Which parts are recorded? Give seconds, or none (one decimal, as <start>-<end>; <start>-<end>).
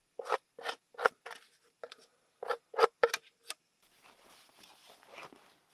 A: 0.0-5.7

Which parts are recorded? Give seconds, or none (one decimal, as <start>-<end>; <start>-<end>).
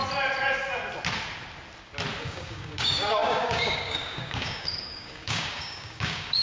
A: 0.0-2.2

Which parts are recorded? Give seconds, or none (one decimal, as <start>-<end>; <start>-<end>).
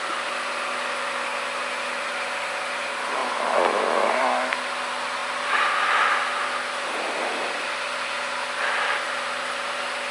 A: 0.0-10.1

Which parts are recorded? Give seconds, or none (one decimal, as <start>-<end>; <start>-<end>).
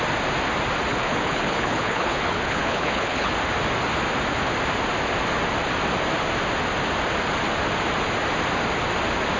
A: 0.0-0.9; 3.3-9.4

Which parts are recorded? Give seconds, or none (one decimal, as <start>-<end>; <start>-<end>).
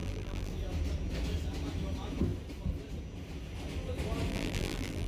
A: 0.5-4.3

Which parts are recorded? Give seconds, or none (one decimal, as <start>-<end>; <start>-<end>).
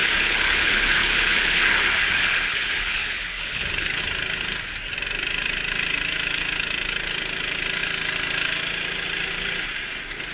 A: 4.0-10.3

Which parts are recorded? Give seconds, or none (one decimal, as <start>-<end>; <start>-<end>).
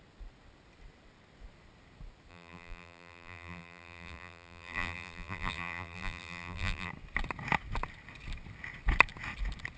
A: 0.0-2.3; 6.9-9.8